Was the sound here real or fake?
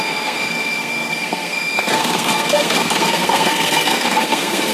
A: fake